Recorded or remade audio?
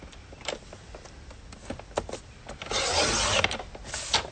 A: recorded